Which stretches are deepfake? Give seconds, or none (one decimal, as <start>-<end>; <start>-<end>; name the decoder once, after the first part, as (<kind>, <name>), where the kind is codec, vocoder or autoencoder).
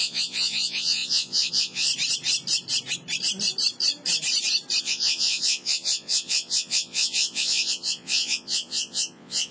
0.0-1.9 (vocoder, Vocos); 4.8-9.5